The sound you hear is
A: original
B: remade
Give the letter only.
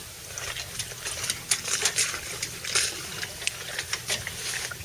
A